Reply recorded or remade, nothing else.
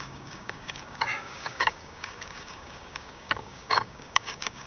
remade